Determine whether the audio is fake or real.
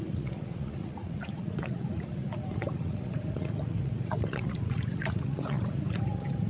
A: fake